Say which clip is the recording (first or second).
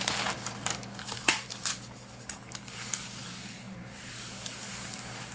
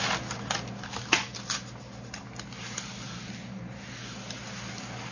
second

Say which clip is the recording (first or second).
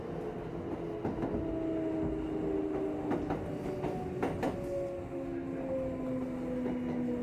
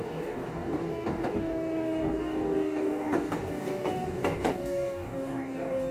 first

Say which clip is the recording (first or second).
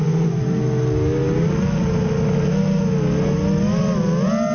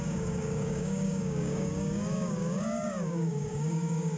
first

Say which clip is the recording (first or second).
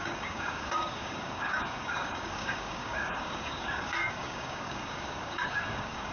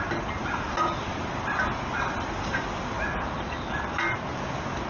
second